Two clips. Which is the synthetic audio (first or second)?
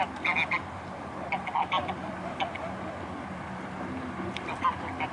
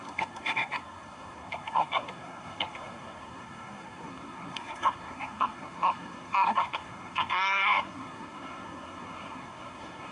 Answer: second